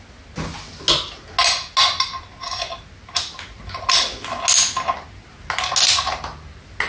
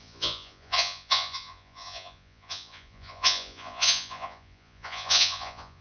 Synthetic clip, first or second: second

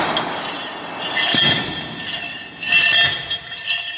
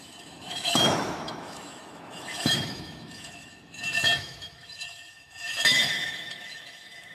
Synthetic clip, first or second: second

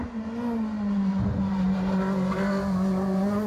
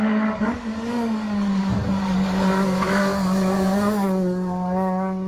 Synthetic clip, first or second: second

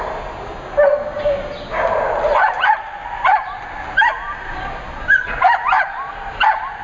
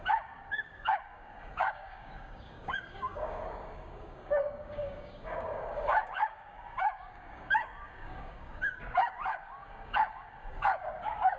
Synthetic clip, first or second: second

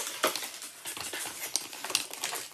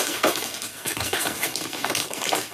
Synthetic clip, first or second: second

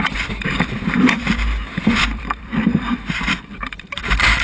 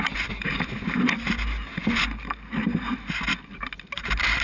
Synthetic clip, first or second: first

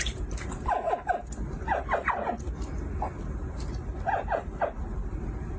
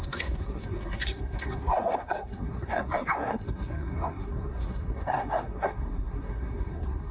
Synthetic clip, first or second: second